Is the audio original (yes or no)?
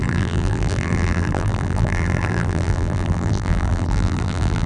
no